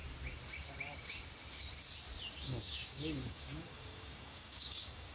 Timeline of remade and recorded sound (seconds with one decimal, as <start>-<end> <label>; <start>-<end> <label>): 0.0-2.3 recorded; 2.3-5.1 remade